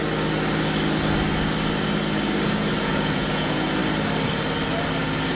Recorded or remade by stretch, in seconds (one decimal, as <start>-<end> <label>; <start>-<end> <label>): 0.0-2.8 recorded; 2.8-3.8 remade; 3.8-5.3 recorded